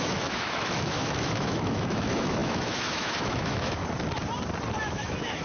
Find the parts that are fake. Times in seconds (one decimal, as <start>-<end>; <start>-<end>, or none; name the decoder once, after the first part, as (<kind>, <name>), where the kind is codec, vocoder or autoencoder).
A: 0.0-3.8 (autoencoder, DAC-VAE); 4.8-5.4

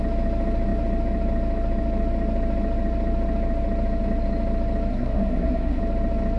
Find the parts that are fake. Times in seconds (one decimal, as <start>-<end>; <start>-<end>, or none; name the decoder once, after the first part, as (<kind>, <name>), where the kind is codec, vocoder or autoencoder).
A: 4.9-5.8 (codec, SNAC)

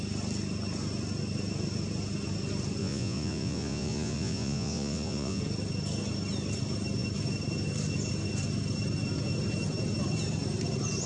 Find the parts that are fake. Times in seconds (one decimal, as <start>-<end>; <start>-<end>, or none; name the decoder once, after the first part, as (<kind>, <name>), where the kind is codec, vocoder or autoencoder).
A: 2.8-5.4 (vocoder, Vocos)

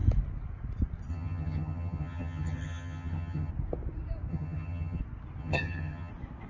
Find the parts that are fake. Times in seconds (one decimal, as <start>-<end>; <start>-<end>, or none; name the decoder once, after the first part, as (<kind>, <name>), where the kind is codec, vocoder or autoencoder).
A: 1.1-3.5 (vocoder, HiFi-GAN); 4.3-5.0; 5.4-6.1